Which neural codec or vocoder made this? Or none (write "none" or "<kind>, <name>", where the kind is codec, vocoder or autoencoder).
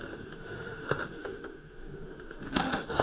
autoencoder, DAC-VAE